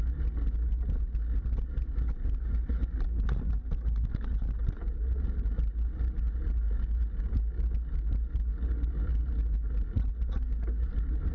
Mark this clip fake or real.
real